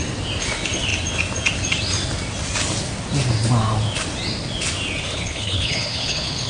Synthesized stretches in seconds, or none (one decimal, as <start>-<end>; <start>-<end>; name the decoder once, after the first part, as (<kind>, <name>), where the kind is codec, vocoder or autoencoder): 5.1-6.5 (codec, HILCodec)